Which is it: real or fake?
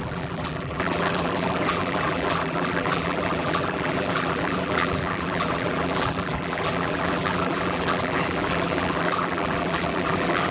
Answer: fake